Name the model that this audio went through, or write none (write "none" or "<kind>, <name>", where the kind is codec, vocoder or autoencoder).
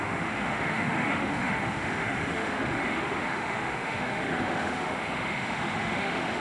autoencoder, DAC-VAE